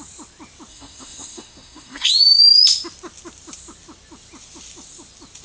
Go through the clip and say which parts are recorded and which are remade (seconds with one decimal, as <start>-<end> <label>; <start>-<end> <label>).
0.0-0.7 recorded; 0.7-2.1 remade; 2.1-5.4 recorded